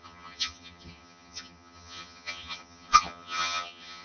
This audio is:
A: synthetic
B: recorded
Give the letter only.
A